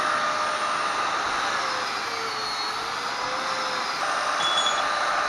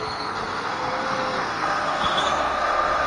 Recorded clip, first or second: first